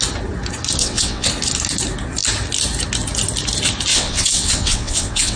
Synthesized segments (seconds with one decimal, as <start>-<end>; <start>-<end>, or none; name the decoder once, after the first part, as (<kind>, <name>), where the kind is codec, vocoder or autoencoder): 0.8-1.3 (vocoder, WaveNeXt); 3.9-5.4